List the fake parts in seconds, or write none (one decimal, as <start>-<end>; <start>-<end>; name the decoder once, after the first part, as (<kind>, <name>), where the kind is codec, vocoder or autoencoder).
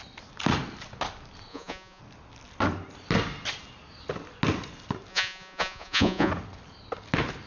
1.5-2.0 (vocoder, Vocos); 5.1-6.3